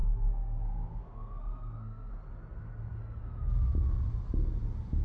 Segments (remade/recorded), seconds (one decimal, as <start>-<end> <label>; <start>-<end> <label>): 0.0-2.1 remade; 2.1-5.0 recorded